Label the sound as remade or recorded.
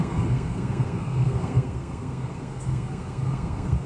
remade